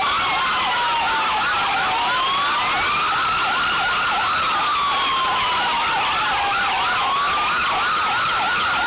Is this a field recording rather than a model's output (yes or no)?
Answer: yes